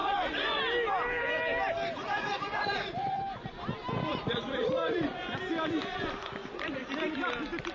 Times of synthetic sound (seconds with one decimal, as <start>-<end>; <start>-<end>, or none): 0.0-0.6; 2.0-3.2; 4.1-5.3; 6.4-6.9